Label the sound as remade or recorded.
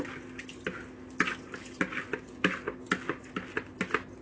recorded